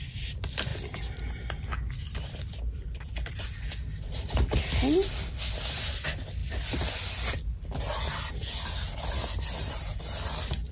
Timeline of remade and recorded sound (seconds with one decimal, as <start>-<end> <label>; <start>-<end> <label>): 0.0-10.7 recorded